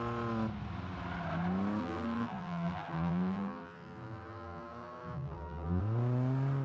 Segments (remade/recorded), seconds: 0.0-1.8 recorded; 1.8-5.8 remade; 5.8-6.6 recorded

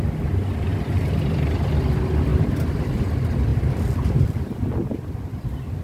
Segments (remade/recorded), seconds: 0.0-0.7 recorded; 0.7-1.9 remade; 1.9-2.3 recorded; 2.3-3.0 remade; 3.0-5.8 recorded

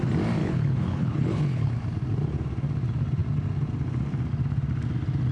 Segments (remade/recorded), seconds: 0.0-0.4 recorded; 0.4-1.7 remade; 1.7-5.3 recorded

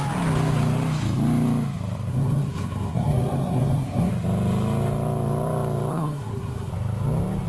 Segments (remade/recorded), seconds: 0.0-2.1 recorded; 2.1-4.1 remade; 4.1-5.9 recorded; 5.9-6.7 remade; 6.7-7.5 recorded

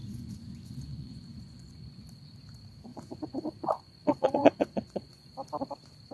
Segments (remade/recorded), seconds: 0.0-2.0 remade; 2.0-2.9 recorded; 2.9-5.3 remade; 5.3-6.1 recorded

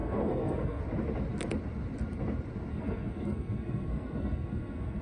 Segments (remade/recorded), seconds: 0.0-0.8 remade; 0.8-2.7 recorded; 2.7-5.0 remade

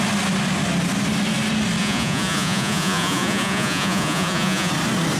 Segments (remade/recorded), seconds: 0.0-1.8 recorded; 1.8-4.7 remade; 4.7-5.2 recorded

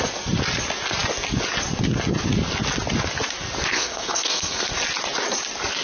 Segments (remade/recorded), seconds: 0.0-3.7 recorded; 3.7-4.7 remade; 4.7-5.8 recorded